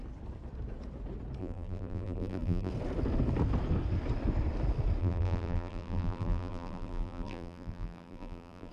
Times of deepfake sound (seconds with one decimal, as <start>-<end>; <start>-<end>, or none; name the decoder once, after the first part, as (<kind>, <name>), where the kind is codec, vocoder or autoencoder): 1.4-2.7 (vocoder, BigVGAN v2); 5.0-8.7